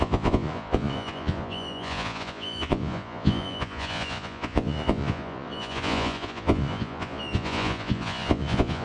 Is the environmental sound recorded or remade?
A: remade